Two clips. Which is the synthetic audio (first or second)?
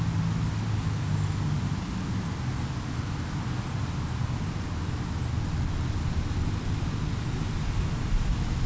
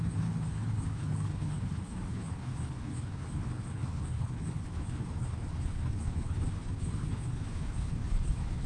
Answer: second